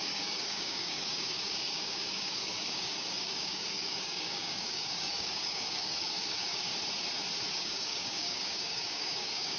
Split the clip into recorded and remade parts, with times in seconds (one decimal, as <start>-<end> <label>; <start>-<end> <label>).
0.0-6.7 remade; 6.7-7.5 recorded; 7.5-9.6 remade